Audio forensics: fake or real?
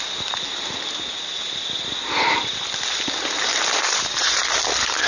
fake